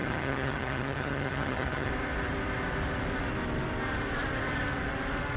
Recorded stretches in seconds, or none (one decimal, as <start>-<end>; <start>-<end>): 1.9-5.4